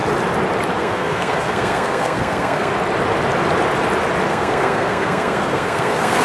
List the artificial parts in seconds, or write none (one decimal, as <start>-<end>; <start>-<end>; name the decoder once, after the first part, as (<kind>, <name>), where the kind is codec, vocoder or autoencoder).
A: 0.8-2.7 (codec, SNAC); 4.3-6.2